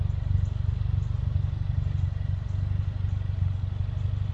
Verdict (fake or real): real